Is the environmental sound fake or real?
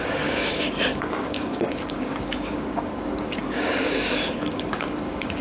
fake